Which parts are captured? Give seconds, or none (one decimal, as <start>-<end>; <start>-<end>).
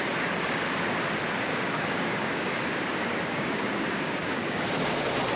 0.0-1.5; 4.7-5.4